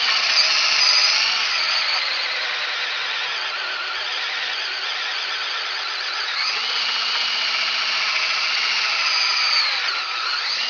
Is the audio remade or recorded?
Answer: recorded